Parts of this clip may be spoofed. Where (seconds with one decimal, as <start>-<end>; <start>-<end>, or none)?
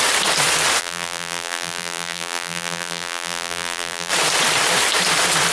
0.8-4.1